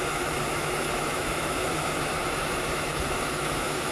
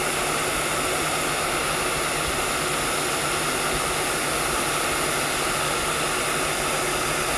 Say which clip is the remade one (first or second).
first